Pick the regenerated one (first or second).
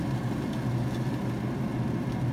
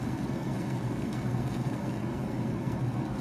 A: second